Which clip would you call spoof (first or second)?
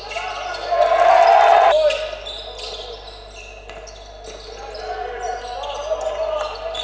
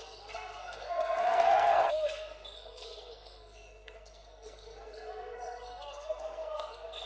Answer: second